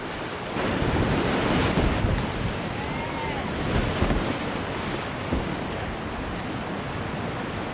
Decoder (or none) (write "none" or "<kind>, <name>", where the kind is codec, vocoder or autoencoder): none